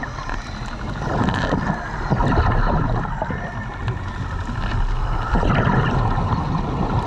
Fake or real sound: real